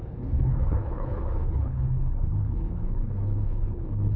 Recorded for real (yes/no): no